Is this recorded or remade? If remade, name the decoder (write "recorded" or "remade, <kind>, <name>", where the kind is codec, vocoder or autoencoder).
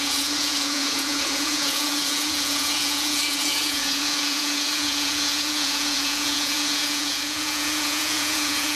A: remade, vocoder, Vocos